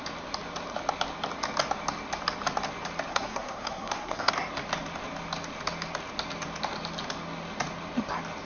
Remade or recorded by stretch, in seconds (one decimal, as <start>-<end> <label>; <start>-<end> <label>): 0.0-3.1 recorded; 3.1-4.3 remade; 4.3-8.5 recorded